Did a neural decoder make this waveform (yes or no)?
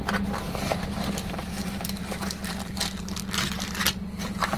no